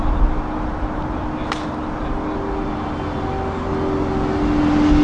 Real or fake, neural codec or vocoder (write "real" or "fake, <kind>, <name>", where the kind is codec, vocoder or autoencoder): real